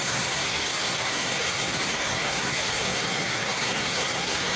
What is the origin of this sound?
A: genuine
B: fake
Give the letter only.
B